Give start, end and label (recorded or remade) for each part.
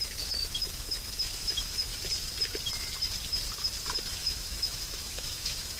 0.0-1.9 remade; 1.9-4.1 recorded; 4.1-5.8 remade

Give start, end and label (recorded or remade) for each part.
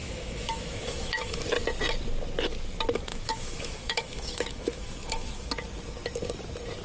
0.0-1.4 remade; 1.4-3.1 recorded; 3.1-5.5 remade; 5.5-6.8 recorded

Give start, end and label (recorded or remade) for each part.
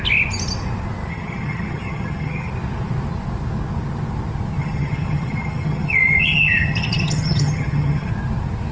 0.0-1.1 recorded; 1.1-2.5 remade; 2.5-4.6 recorded; 4.6-8.1 remade; 8.1-8.7 recorded